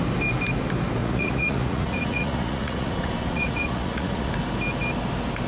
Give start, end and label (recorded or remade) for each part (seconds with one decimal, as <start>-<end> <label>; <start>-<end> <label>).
0.0-1.0 recorded; 1.0-4.3 remade; 4.3-5.5 recorded